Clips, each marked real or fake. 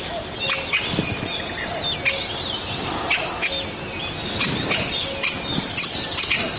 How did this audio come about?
real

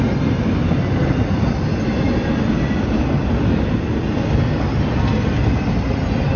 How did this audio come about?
real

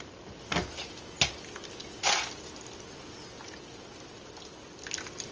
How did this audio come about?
real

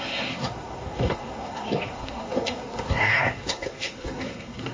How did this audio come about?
fake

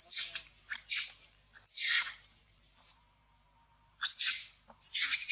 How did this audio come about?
fake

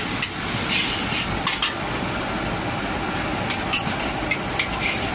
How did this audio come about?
real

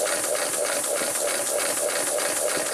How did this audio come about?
real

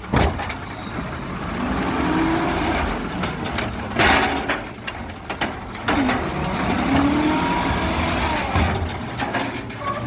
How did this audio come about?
real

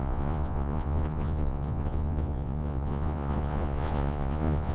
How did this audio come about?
fake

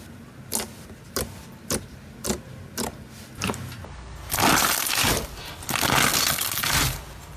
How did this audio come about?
real